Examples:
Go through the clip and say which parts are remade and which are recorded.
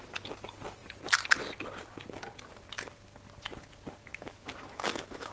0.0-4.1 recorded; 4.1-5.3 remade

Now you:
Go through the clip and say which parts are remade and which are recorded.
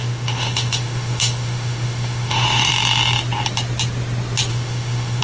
0.0-2.7 remade; 2.7-4.5 recorded; 4.5-5.2 remade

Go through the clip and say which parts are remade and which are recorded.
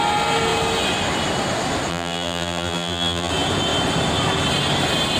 0.0-1.9 recorded; 1.9-3.3 remade; 3.3-5.2 recorded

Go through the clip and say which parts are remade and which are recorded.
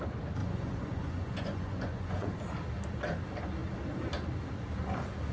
0.0-0.4 recorded; 0.4-2.4 remade; 2.4-5.3 recorded